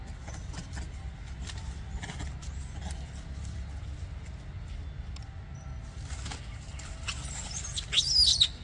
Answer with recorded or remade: recorded